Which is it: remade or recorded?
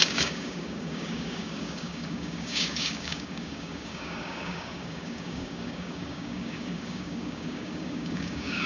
remade